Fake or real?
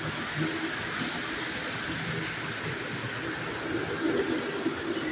real